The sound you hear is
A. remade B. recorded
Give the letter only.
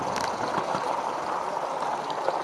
B